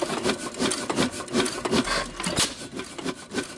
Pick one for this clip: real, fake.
real